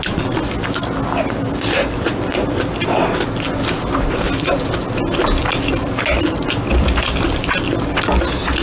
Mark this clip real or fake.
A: real